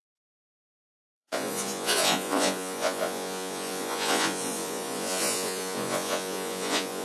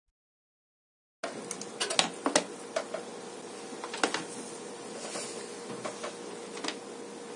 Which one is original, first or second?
second